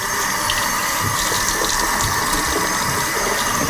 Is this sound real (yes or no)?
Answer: yes